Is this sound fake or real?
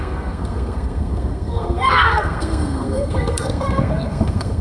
fake